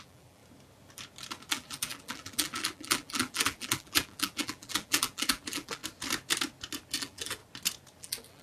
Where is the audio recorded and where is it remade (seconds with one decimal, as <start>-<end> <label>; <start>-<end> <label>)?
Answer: 0.0-0.4 remade; 0.4-1.5 recorded; 1.5-5.8 remade; 5.8-7.0 recorded; 7.0-7.4 remade; 7.4-8.0 recorded; 8.0-8.4 remade